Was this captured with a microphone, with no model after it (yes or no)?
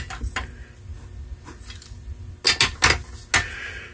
yes